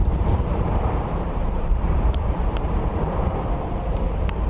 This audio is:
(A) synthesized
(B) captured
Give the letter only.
A